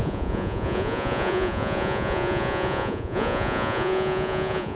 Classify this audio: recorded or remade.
remade